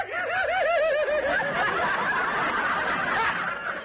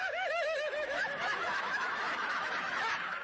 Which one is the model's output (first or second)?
second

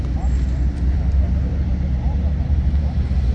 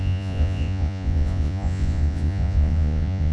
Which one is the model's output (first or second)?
second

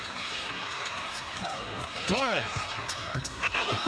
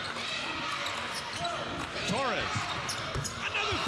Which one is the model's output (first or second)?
first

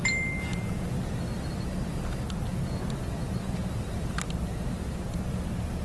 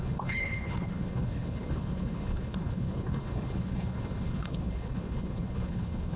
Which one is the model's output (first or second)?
second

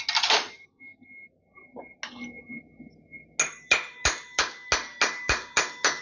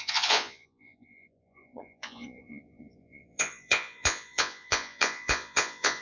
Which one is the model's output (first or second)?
second